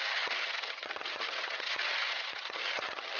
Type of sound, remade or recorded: remade